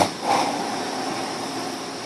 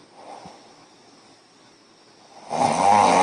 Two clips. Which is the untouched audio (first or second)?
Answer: second